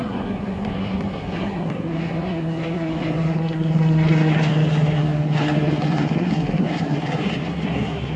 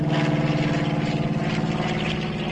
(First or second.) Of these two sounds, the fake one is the first